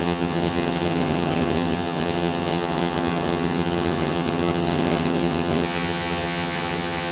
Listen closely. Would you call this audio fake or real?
fake